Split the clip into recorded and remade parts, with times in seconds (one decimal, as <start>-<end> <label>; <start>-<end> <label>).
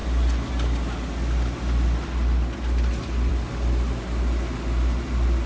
0.0-5.5 recorded